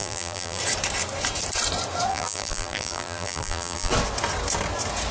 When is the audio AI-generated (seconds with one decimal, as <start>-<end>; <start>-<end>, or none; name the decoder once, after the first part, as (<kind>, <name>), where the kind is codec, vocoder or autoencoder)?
0.0-0.6 (vocoder, BigVGAN v2); 2.1-3.9